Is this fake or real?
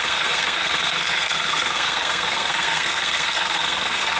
fake